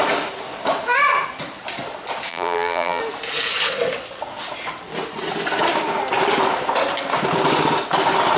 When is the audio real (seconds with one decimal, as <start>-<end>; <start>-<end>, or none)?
0.0-2.3; 3.0-8.4